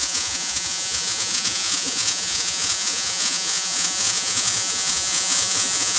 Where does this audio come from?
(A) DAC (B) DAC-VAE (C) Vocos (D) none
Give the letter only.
C